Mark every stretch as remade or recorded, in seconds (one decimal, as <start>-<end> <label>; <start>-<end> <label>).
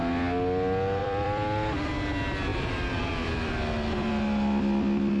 0.0-1.0 recorded; 1.0-1.9 remade; 1.9-2.5 recorded; 2.5-4.1 remade; 4.1-5.2 recorded